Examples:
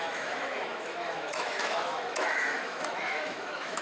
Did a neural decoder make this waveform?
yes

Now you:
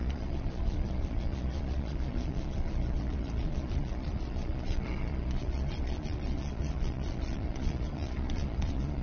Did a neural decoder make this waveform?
yes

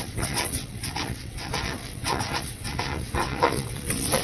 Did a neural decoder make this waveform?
yes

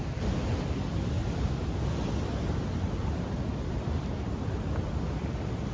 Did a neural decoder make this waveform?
no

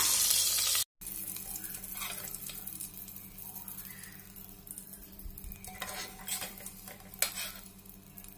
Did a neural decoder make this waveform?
no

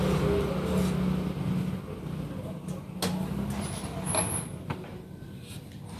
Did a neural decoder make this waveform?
no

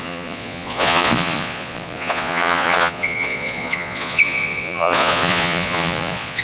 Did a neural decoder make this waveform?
yes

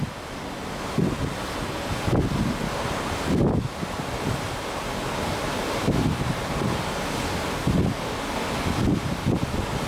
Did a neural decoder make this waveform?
no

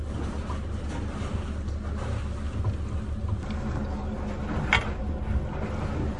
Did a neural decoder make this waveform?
no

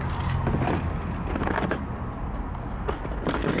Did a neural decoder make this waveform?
no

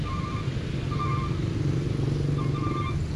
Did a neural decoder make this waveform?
no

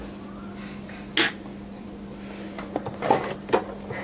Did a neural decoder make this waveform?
no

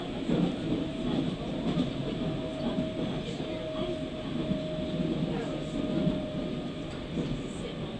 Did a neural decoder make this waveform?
no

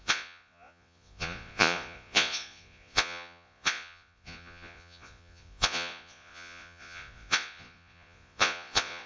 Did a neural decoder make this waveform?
yes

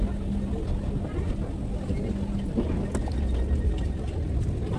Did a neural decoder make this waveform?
no